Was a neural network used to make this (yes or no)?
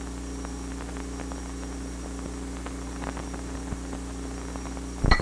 yes